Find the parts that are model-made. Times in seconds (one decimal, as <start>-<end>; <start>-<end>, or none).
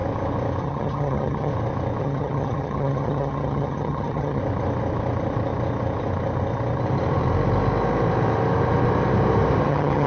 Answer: 0.6-1.5; 2.0-4.4; 9.6-10.1